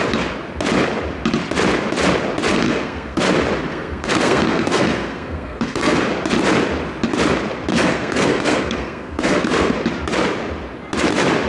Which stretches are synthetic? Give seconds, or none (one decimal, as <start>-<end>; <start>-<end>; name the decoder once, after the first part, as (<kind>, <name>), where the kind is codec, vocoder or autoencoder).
2.5-3.2 (codec, SNAC); 3.7-6.0; 7.7-9.7